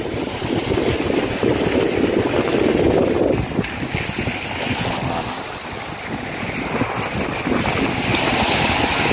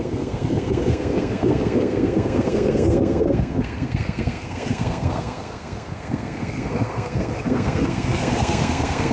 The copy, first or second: second